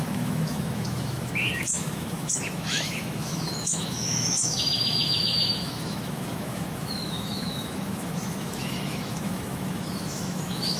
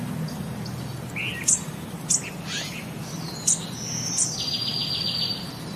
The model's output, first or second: first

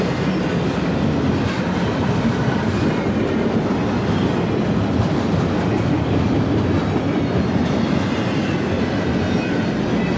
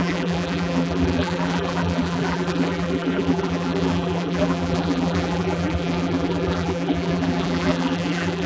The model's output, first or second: second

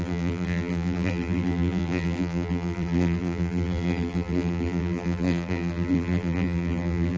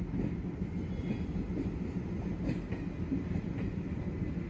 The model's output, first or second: first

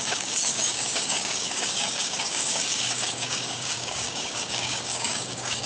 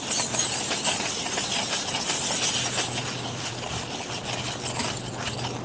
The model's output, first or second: first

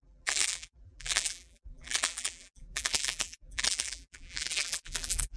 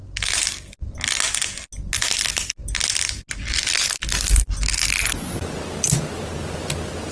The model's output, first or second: first